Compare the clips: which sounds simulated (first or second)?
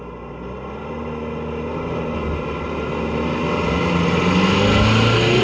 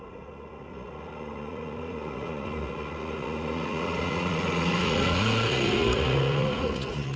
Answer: second